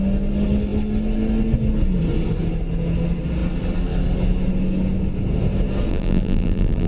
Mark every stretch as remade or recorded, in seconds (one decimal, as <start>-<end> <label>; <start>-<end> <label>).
0.0-5.9 recorded; 5.9-6.9 remade